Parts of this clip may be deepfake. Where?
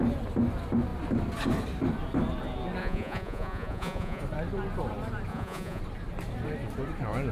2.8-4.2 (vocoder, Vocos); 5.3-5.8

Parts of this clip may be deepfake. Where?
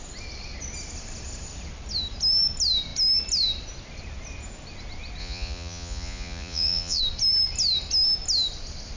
5.2-7.0 (vocoder, Vocos)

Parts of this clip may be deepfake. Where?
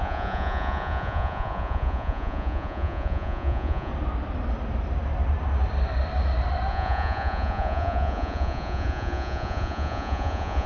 0.0-3.9 (vocoder, Vocos); 6.7-10.7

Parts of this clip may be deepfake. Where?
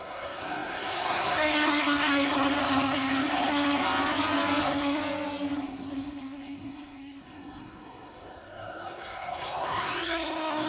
0.0-3.8 (codec, SNAC); 4.6-5.0; 5.5-10.7